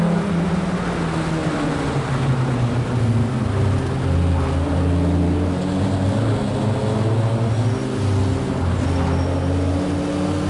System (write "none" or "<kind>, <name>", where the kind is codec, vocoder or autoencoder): none